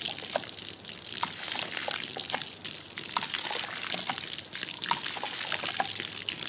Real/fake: real